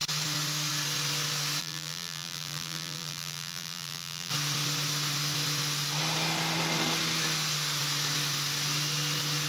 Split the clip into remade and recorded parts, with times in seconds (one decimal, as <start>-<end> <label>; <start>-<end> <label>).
0.0-1.6 recorded; 1.6-4.3 remade; 4.3-9.5 recorded